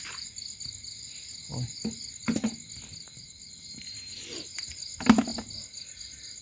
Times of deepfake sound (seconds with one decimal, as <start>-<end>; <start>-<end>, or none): none